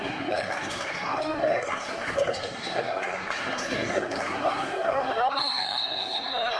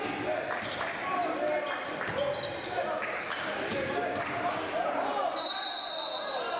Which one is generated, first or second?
first